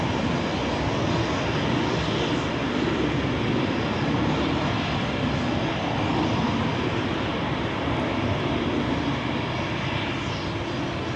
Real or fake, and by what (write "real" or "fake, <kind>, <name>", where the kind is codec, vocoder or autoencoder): real